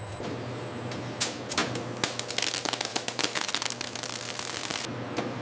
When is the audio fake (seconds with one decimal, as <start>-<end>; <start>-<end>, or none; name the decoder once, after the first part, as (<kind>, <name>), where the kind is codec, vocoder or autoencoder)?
2.9-3.5 (autoencoder, DAC-VAE)